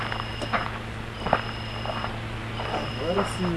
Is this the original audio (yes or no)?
yes